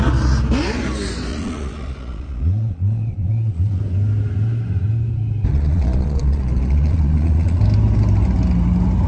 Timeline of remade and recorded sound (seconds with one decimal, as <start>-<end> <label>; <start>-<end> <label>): 0.0-1.3 recorded; 1.3-3.8 remade; 3.8-5.5 recorded; 5.5-7.6 remade; 7.6-9.1 recorded